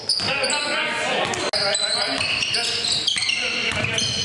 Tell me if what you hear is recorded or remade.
recorded